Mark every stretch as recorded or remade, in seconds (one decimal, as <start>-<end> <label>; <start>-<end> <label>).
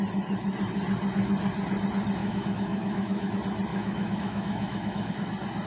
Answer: 0.0-2.2 recorded; 2.2-3.3 remade; 3.3-3.7 recorded; 3.7-5.1 remade; 5.1-5.7 recorded